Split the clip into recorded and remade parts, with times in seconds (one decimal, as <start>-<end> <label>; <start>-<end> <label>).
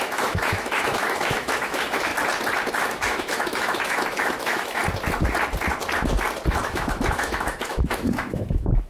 0.0-2.1 remade; 2.1-2.7 recorded; 2.7-4.8 remade; 4.8-6.6 recorded; 6.6-8.9 remade